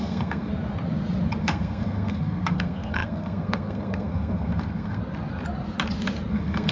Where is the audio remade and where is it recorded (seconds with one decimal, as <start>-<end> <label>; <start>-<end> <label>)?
0.0-0.5 remade; 0.5-1.4 recorded; 1.4-5.0 remade; 5.0-6.3 recorded; 6.3-6.7 remade